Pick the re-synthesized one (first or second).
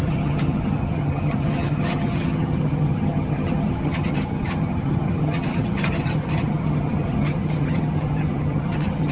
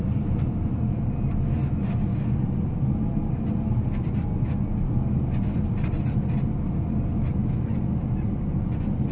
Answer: first